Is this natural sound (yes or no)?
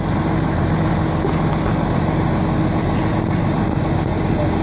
yes